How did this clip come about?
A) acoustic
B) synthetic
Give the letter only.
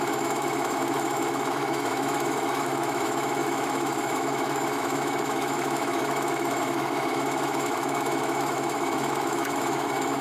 B